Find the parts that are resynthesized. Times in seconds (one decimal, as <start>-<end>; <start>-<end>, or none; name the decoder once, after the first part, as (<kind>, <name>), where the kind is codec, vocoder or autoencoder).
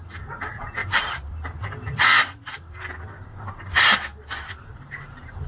0.0-4.1 (vocoder, BigVGAN v2); 4.6-5.5